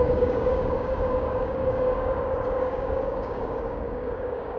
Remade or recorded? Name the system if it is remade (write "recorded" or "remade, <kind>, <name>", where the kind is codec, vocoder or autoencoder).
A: remade, codec, DAC